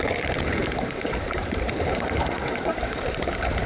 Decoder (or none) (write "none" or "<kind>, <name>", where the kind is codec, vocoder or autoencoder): vocoder, BigVGAN v2